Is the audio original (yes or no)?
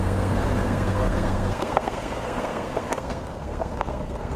no